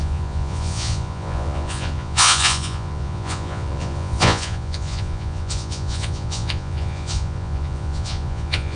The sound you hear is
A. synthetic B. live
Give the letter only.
A